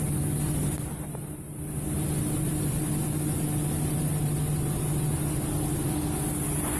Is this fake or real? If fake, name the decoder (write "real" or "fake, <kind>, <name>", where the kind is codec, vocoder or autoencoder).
real